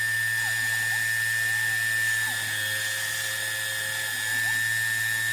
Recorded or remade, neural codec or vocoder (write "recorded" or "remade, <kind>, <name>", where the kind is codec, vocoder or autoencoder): recorded